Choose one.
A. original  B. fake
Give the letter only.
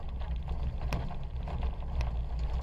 A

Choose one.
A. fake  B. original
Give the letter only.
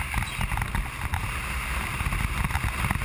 B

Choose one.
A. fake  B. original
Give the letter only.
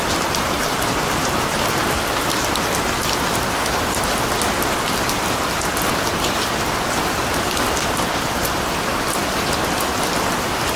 B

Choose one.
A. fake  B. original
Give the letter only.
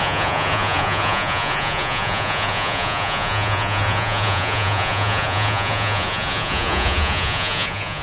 A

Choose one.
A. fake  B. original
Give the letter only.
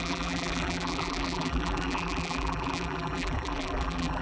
A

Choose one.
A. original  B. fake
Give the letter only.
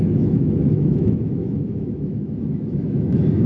B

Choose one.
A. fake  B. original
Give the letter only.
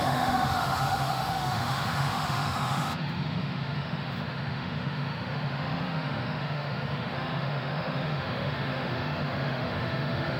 A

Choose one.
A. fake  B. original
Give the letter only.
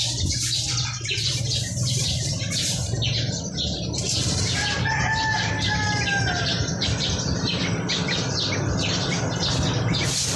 B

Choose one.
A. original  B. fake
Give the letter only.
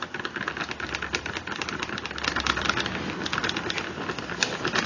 A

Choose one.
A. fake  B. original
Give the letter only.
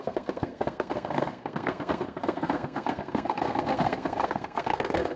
A